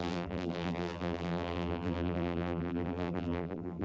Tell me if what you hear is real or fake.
fake